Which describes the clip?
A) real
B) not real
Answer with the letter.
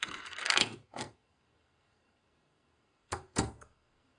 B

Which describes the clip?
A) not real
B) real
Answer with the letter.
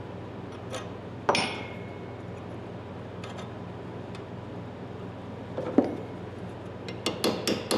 B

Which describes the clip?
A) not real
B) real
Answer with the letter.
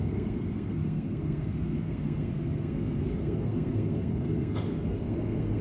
A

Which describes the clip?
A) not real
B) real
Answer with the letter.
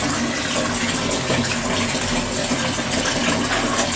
B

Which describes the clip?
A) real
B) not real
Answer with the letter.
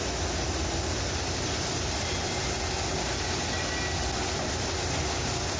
A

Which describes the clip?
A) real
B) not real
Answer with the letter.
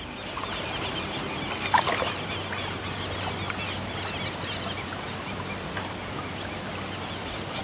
A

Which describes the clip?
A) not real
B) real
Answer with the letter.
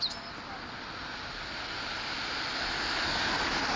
B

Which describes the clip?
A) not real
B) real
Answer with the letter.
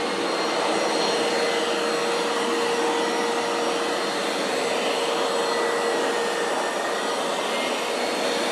B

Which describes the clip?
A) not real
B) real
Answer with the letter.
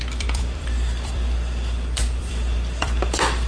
A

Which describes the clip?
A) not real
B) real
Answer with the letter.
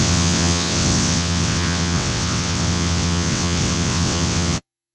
A